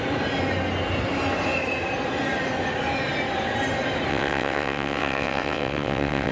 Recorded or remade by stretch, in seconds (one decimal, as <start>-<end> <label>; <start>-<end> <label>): 0.0-4.1 recorded; 4.1-6.3 remade